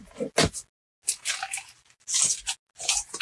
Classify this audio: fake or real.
real